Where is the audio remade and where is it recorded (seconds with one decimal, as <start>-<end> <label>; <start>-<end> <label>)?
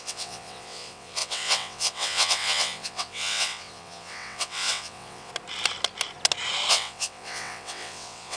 0.0-5.3 remade; 5.3-6.7 recorded; 6.7-8.4 remade